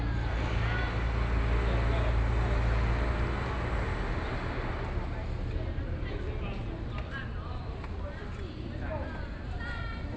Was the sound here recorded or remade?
recorded